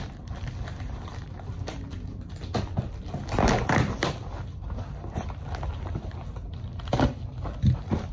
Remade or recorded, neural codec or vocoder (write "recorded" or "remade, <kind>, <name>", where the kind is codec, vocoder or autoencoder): recorded